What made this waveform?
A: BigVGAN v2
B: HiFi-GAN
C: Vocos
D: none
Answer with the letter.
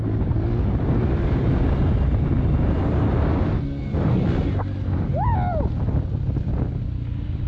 D